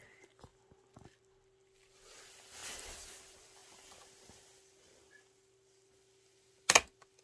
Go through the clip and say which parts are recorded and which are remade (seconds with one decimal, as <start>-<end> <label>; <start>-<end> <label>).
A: 0.0-7.2 recorded